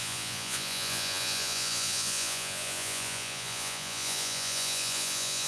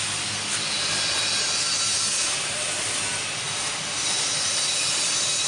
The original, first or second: second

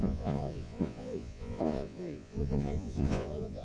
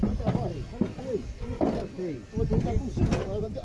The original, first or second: second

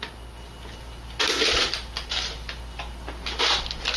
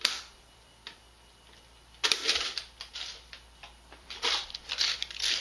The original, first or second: first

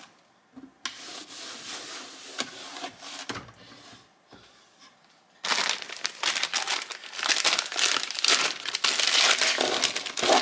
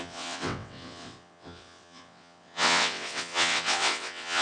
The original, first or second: first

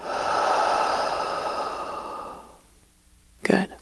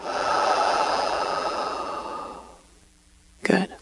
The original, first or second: first